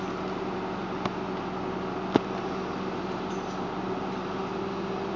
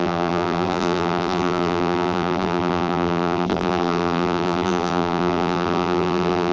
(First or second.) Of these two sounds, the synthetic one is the second